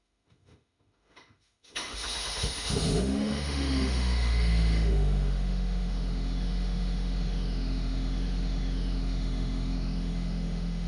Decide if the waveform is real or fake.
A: fake